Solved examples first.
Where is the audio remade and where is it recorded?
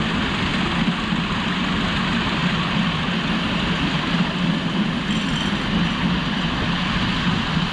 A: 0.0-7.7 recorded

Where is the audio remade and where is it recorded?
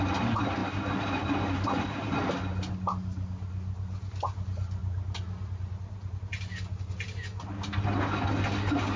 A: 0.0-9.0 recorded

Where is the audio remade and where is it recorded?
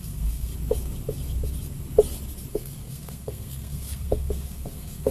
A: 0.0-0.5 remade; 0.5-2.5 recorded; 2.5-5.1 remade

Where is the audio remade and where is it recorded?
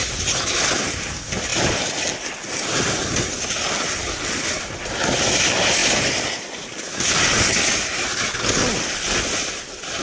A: 0.0-10.0 recorded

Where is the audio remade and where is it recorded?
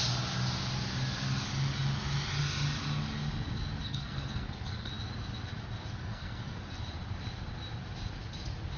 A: 0.0-3.8 recorded; 3.8-4.9 remade; 4.9-6.0 recorded; 6.0-6.6 remade; 6.6-8.8 recorded